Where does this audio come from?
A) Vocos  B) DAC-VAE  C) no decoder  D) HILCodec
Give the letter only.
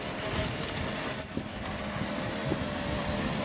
C